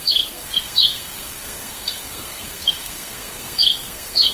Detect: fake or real fake